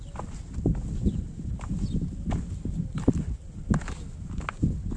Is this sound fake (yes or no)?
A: no